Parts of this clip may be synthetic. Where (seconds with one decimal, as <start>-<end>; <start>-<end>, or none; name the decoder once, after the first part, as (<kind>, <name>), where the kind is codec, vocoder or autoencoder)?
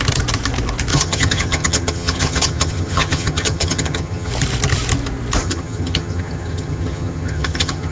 0.9-4.3 (vocoder, HiFi-GAN); 5.4-7.9